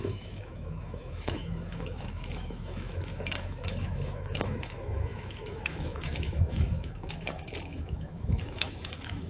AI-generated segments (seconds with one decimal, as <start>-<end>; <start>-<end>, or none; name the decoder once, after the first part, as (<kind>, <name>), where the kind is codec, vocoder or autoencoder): 0.0-9.3 (autoencoder, DAC-VAE)